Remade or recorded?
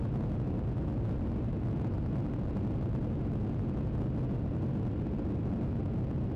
recorded